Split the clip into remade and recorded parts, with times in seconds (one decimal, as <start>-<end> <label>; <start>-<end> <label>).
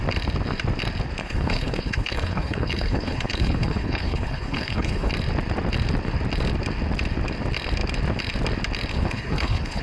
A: 0.0-1.2 recorded; 1.2-5.1 remade; 5.1-8.9 recorded; 8.9-9.8 remade